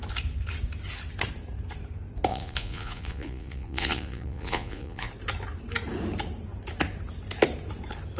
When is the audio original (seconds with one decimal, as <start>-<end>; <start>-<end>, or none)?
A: 0.0-2.3; 5.1-8.2